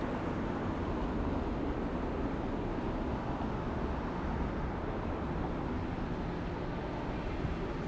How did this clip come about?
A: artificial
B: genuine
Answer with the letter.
B